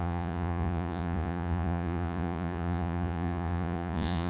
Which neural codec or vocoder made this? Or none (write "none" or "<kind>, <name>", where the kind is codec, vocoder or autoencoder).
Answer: vocoder, Vocos